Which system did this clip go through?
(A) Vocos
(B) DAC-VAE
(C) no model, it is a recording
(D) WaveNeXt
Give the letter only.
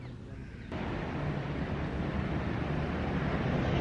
C